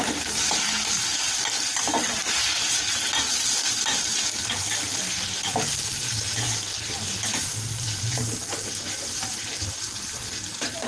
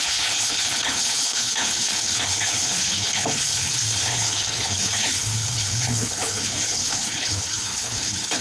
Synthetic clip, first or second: second